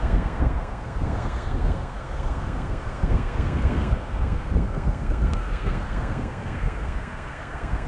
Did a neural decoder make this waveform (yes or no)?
yes